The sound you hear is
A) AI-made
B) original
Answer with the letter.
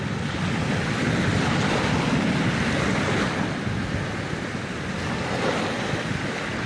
B